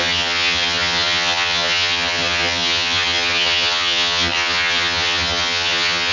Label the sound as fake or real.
fake